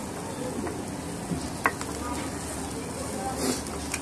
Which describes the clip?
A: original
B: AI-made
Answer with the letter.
A